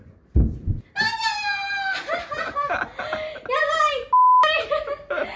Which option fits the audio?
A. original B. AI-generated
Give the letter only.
A